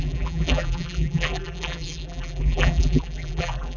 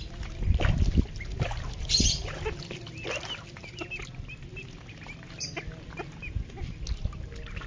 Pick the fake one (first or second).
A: first